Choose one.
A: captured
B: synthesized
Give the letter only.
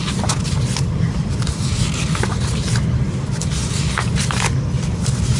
A